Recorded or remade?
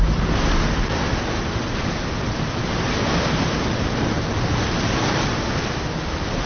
recorded